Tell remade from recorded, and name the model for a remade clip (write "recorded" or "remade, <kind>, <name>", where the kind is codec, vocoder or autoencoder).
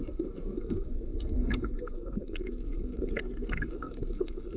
remade, codec, SNAC